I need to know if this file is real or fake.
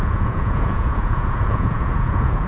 fake